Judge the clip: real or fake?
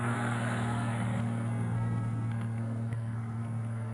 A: fake